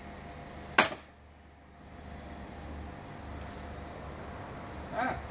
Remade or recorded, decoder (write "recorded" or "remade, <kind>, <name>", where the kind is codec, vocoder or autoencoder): recorded